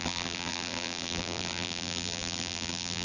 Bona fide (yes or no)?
no